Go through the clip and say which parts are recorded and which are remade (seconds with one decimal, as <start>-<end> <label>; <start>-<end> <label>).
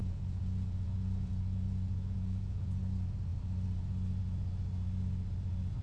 0.0-2.8 remade; 2.8-5.8 recorded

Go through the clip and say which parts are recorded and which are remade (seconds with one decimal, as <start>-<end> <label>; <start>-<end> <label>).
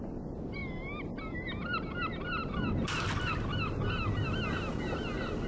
0.0-5.5 recorded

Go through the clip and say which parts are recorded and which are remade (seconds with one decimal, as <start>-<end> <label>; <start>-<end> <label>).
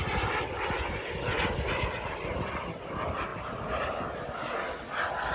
0.0-5.3 recorded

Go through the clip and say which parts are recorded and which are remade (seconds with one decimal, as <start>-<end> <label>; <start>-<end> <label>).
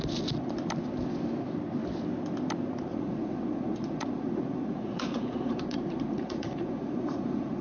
0.0-2.9 recorded; 2.9-7.6 remade